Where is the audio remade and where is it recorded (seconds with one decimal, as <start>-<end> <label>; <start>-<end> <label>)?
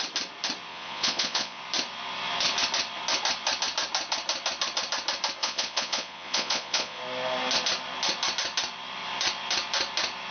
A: 0.0-0.7 recorded; 0.7-1.6 remade; 1.6-5.4 recorded; 5.4-7.0 remade; 7.0-10.3 recorded